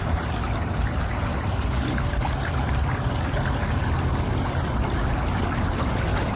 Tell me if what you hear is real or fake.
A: real